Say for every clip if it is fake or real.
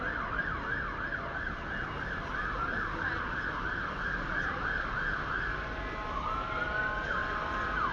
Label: real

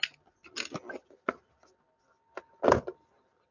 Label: real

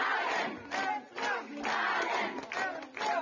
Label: real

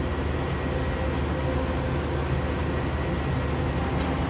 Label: real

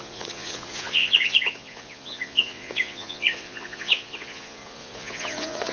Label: fake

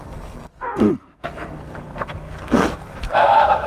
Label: fake